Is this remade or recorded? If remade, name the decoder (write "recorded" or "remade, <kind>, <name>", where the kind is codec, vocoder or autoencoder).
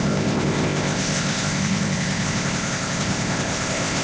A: remade, codec, ZipCodec